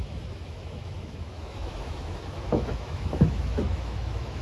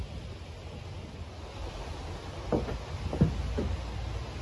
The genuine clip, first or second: second